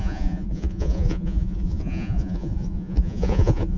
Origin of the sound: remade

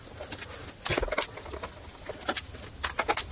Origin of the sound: recorded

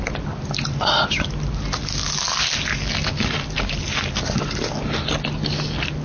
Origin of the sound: recorded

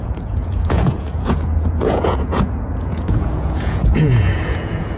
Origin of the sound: remade